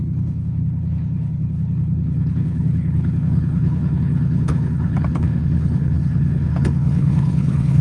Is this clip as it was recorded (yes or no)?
no